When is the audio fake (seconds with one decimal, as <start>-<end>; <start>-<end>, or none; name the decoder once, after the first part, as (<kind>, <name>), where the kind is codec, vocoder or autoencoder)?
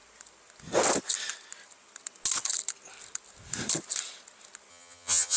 4.7-5.4 (vocoder, HiFi-GAN)